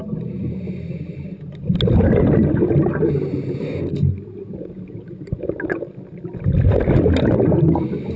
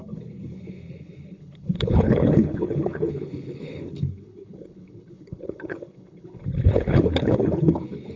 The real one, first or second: first